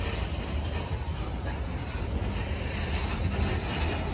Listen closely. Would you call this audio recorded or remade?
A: recorded